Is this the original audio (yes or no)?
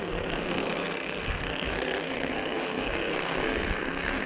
no